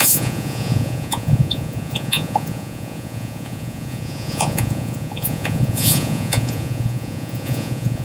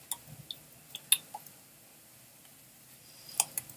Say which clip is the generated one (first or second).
first